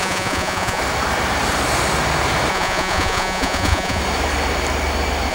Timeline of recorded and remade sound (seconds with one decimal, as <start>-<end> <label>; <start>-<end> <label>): 0.0-0.8 remade; 0.8-2.5 recorded; 2.5-4.0 remade; 4.0-5.3 recorded